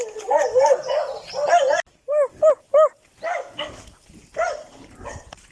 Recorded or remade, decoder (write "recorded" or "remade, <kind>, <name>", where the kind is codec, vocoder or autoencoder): recorded